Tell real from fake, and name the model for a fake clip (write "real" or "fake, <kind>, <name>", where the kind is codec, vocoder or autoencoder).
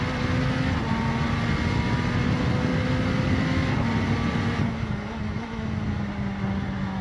real